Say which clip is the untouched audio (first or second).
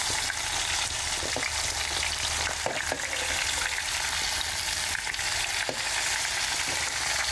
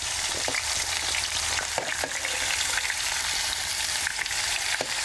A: first